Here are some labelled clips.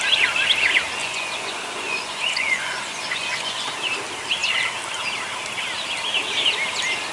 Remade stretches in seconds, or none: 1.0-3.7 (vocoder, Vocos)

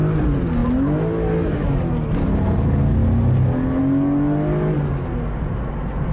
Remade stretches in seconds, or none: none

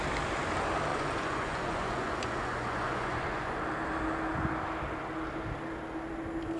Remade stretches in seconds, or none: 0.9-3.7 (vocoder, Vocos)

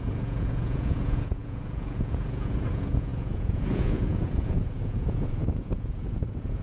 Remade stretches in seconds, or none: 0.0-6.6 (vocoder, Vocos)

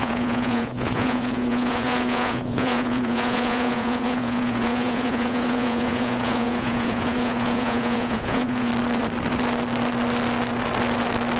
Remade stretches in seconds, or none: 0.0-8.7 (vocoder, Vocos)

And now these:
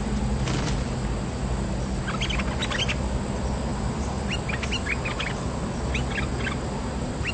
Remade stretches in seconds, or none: none

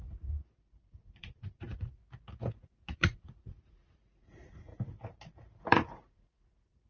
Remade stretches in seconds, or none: 0.0-2.0 (vocoder, Vocos); 2.6-4.7; 5.6-6.9

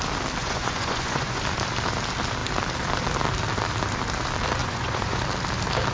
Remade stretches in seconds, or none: 0.4-1.4 (vocoder, Vocos); 4.6-5.2